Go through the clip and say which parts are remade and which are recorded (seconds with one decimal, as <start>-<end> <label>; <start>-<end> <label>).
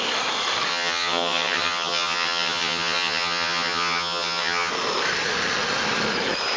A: 0.0-0.7 recorded; 0.7-4.7 remade; 4.7-6.6 recorded